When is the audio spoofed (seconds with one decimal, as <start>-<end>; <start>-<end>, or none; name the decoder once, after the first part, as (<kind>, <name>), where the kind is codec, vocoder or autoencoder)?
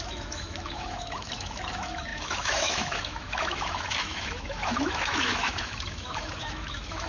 0.0-7.1 (autoencoder, DAC-VAE)